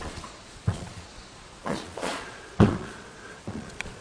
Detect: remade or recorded remade